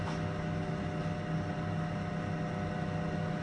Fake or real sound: real